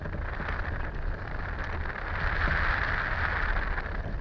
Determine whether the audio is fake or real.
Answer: real